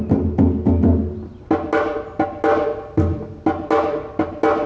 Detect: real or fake real